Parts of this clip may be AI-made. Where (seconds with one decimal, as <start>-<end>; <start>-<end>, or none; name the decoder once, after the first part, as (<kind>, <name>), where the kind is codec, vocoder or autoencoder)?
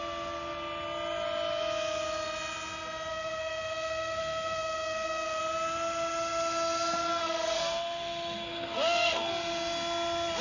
3.1-5.4 (codec, SNAC); 7.1-9.3